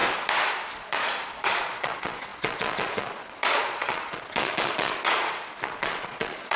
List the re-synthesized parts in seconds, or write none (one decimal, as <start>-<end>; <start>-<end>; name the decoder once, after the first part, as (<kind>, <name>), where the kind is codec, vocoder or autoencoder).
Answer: 0.9-6.6 (vocoder, Vocos)